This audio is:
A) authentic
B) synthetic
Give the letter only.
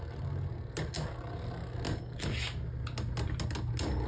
A